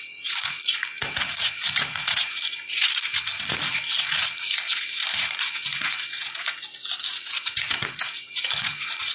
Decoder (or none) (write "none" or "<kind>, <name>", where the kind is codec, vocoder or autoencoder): vocoder, Vocos